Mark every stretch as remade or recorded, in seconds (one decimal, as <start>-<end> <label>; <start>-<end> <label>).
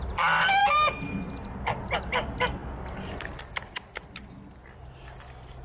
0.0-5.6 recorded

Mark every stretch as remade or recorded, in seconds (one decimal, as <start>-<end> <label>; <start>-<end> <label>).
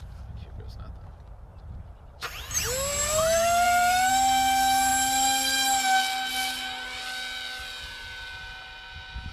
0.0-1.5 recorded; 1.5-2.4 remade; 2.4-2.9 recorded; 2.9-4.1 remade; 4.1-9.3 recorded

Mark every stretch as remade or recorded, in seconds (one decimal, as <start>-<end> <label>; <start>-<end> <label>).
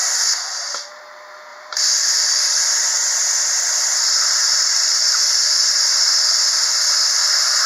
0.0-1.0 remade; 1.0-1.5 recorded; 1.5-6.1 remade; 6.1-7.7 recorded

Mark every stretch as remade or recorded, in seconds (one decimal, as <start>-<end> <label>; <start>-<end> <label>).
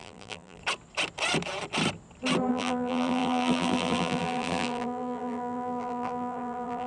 0.0-0.6 remade; 0.6-2.5 recorded; 2.5-6.9 remade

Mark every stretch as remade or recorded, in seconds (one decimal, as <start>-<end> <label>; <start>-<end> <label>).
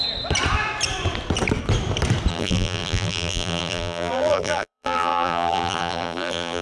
0.0-2.3 recorded; 2.3-6.6 remade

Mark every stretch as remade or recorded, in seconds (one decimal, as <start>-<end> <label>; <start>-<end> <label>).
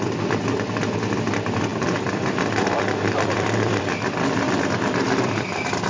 0.0-5.9 remade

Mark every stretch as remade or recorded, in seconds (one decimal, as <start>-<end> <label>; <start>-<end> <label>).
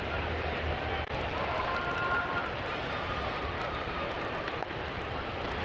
0.0-5.6 remade